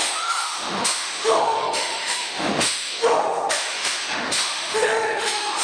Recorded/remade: remade